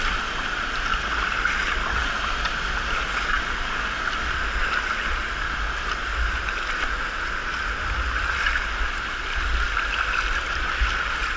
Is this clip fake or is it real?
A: real